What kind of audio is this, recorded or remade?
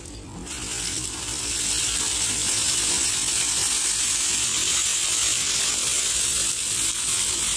recorded